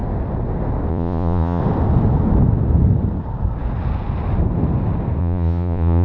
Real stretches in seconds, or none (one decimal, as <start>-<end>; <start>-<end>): 0.0-0.9; 1.6-5.2